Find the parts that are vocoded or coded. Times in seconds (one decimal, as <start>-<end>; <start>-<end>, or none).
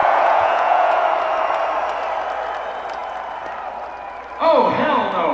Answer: 0.0-1.0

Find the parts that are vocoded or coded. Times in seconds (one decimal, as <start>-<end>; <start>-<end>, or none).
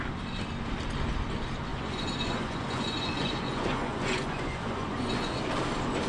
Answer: 1.7-5.4